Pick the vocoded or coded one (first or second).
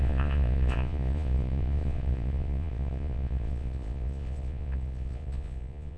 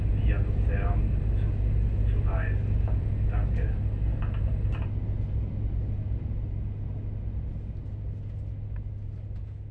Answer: first